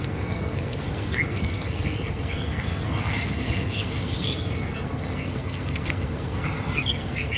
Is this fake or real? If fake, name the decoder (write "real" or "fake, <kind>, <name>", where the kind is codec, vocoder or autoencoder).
fake, codec, SNAC